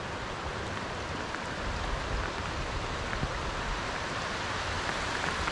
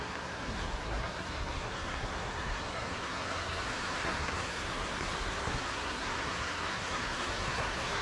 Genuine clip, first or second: first